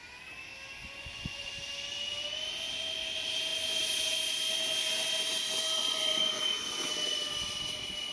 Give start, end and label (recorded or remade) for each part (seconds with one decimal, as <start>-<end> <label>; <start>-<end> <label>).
0.0-0.8 recorded; 0.8-1.5 remade; 1.5-5.8 recorded; 5.8-6.4 remade; 6.4-8.1 recorded